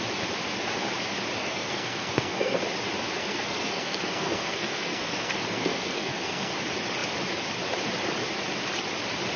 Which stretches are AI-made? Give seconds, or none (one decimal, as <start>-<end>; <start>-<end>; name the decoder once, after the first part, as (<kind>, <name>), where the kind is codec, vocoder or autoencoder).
1.4-2.6 (codec, SNAC); 3.2-6.5